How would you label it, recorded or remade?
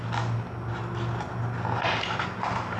recorded